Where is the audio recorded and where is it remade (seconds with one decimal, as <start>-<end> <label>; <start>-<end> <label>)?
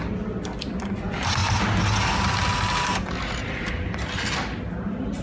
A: 0.0-5.2 recorded